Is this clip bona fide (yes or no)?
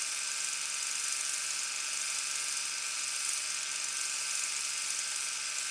yes